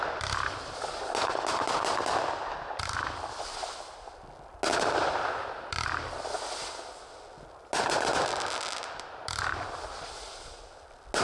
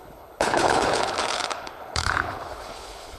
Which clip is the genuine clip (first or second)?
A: first